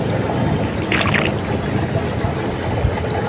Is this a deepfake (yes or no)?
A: no